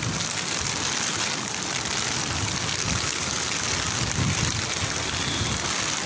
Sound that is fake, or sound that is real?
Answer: real